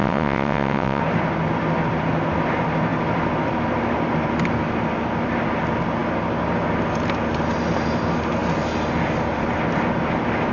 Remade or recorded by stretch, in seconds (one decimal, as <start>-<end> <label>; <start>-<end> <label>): 0.0-1.0 remade; 1.0-10.5 recorded